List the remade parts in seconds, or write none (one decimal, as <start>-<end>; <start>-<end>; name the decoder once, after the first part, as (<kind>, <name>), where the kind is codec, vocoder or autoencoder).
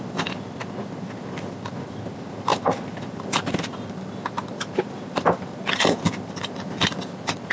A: 0.0-7.5 (vocoder, BigVGAN v2)